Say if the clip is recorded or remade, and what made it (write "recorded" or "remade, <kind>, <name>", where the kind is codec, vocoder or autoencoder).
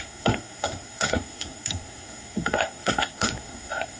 remade, codec, SNAC